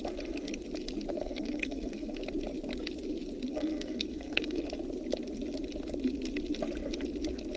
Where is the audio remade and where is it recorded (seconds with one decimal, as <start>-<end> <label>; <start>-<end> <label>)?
0.0-1.1 recorded; 1.1-2.2 remade; 2.2-3.5 recorded; 3.5-4.6 remade; 4.6-7.6 recorded

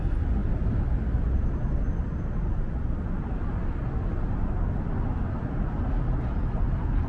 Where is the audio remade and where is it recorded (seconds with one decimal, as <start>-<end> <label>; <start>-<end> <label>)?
0.0-7.1 recorded